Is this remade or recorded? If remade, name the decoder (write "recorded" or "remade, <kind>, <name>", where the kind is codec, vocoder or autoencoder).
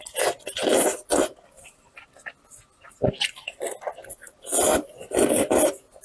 recorded